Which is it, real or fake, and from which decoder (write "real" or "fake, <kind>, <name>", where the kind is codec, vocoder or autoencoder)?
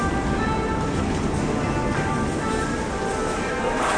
real